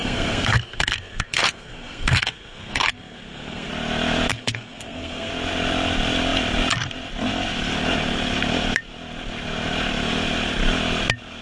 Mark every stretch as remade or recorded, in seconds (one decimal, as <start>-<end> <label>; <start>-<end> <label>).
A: 0.0-3.7 remade; 3.7-4.3 recorded; 4.3-5.3 remade; 5.3-11.4 recorded